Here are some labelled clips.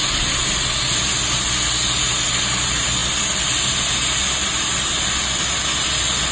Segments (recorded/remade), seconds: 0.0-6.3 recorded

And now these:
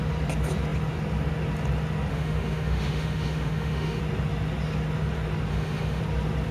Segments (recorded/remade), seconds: 0.0-2.1 recorded; 2.1-4.0 remade; 4.0-5.5 recorded; 5.5-6.0 remade; 6.0-6.5 recorded

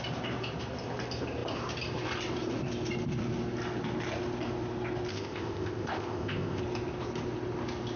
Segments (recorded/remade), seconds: 0.0-5.1 recorded; 5.1-6.6 remade; 6.6-8.0 recorded

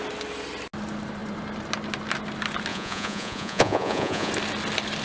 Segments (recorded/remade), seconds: 0.0-2.7 recorded; 2.7-4.3 remade; 4.3-5.0 recorded

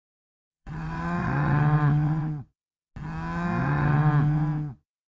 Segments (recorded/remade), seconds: 0.0-0.5 recorded; 0.5-2.9 remade; 2.9-3.6 recorded; 3.6-4.1 remade; 4.1-5.1 recorded

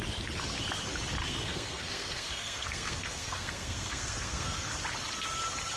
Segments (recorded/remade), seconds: 0.0-1.2 recorded; 1.2-4.7 remade; 4.7-5.8 recorded